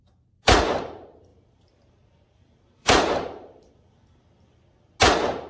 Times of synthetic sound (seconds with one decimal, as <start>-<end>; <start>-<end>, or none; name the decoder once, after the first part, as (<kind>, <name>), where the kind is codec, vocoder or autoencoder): 1.3-3.7 (vocoder, BigVGAN v2)